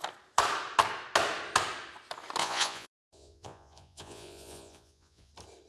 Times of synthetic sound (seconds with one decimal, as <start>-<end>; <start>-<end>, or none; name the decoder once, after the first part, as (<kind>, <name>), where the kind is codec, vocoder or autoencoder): 2.4-5.3 (vocoder, Vocos)